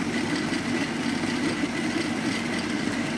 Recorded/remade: recorded